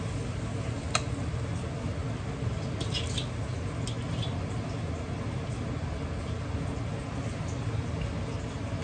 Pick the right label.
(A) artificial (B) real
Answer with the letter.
B